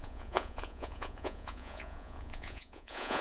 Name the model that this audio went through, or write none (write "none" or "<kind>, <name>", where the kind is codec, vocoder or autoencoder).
vocoder, Vocos